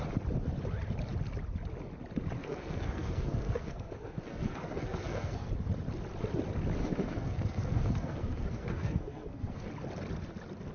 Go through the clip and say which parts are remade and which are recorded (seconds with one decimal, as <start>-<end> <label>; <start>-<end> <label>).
0.0-2.4 recorded; 2.4-5.5 remade; 5.5-6.8 recorded; 6.8-9.7 remade; 9.7-10.7 recorded